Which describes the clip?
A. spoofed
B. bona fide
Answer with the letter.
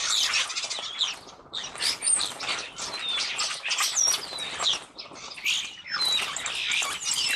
B